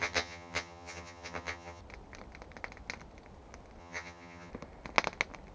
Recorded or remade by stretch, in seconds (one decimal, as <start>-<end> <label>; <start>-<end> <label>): 0.0-1.8 remade; 1.8-3.8 recorded; 3.8-4.5 remade; 4.5-5.5 recorded